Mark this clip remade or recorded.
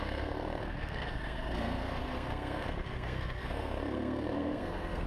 remade